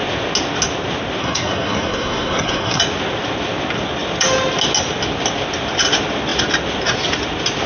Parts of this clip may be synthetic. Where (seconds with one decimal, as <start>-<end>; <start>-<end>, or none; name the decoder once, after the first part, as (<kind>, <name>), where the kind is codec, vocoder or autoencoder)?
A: 1.2-2.8 (codec, SNAC)